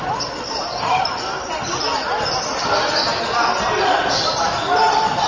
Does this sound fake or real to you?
real